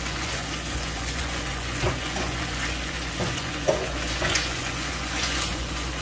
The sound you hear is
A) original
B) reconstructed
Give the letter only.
B